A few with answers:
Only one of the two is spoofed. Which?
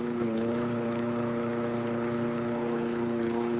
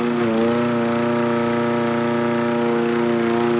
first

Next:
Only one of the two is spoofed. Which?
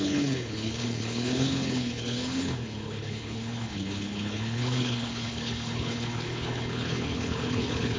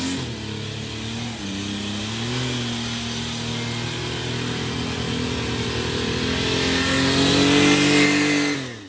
first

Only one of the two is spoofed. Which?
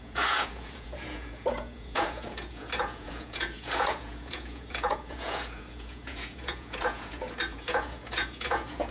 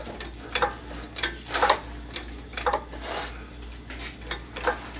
first